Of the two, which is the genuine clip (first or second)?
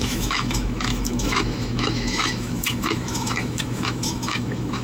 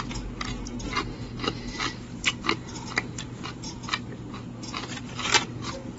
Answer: second